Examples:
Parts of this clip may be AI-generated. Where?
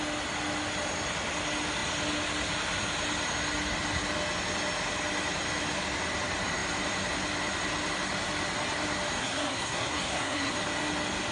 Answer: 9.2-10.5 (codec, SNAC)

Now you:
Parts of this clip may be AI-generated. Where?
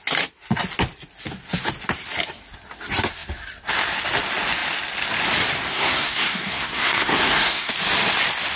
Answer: 5.7-7.7 (codec, SNAC)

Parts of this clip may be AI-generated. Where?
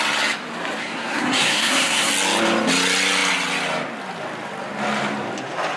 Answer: 0.8-2.1 (codec, SNAC)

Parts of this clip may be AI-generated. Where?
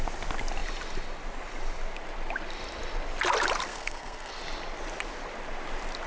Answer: 3.7-4.4 (codec, SNAC)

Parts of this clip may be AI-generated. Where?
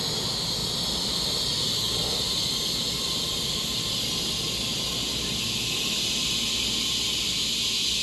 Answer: none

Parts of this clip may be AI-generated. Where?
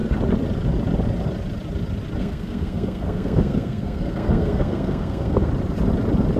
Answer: 2.2-5.5 (codec, SNAC)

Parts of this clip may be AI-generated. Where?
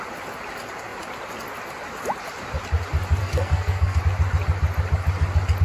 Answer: 3.2-4.0 (codec, SNAC)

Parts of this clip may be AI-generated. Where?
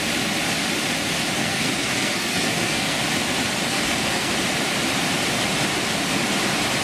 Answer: 1.4-3.0 (codec, SNAC); 3.7-4.3